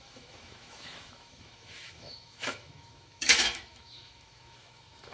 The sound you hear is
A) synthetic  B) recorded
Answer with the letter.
A